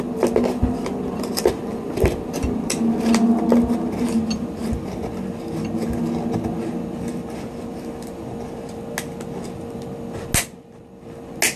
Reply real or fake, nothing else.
real